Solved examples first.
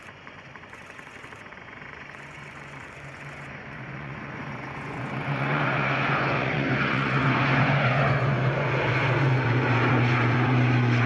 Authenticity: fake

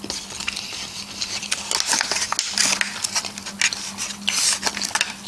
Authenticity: real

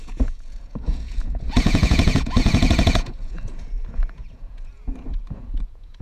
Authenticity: fake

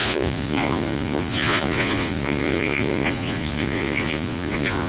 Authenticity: fake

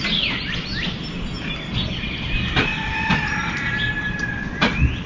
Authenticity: real